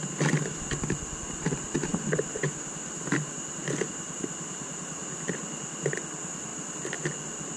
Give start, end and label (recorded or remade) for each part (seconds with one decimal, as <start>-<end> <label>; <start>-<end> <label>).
0.0-3.6 recorded; 3.6-5.7 remade; 5.7-7.6 recorded